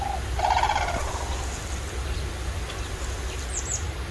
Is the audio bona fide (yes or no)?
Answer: yes